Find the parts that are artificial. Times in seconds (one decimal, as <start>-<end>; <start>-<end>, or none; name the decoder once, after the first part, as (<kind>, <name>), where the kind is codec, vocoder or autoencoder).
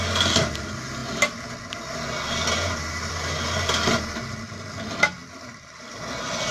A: 5.2-5.9 (vocoder, BigVGAN v2)